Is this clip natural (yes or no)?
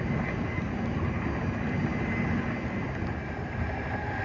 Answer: yes